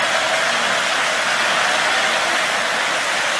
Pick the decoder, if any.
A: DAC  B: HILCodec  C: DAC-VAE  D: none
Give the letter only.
D